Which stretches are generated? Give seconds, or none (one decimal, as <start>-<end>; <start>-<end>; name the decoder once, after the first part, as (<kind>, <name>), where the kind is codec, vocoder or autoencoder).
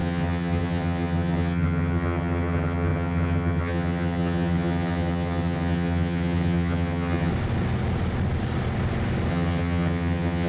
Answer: 0.0-7.3 (vocoder, HiFi-GAN); 9.3-10.5